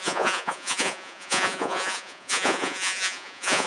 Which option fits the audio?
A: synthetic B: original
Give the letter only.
A